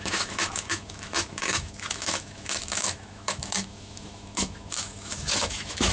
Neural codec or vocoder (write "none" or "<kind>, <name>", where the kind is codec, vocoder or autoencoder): autoencoder, DAC-VAE